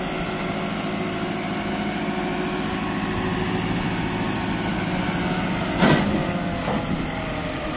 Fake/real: real